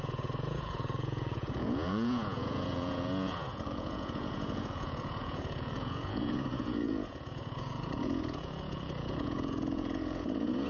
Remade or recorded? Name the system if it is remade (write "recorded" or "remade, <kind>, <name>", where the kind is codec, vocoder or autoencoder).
remade, vocoder, Vocos